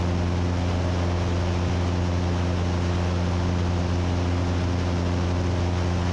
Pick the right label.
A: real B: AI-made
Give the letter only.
A